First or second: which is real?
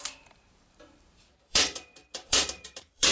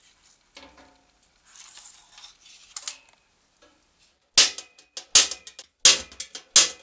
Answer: second